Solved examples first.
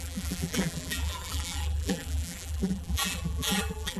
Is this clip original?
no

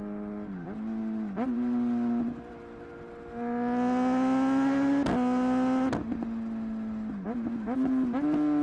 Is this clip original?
yes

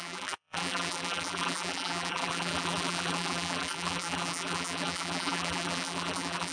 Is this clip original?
no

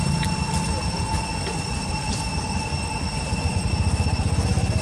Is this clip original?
yes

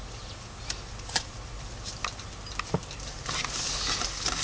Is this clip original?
yes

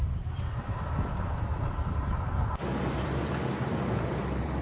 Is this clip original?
no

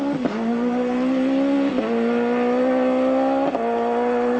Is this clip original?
yes